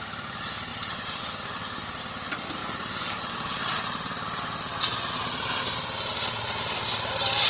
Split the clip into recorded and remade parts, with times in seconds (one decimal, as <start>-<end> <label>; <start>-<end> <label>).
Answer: 0.0-7.5 remade